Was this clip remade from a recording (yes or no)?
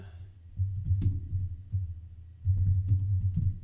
no